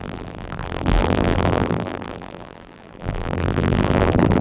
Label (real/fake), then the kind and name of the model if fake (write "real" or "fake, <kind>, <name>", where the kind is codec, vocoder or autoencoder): fake, vocoder, BigVGAN v2